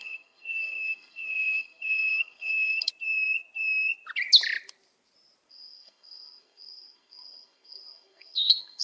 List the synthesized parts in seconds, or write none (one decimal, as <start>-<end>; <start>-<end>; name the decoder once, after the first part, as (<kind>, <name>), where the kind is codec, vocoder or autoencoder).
0.0-2.9 (codec, SNAC); 5.5-8.8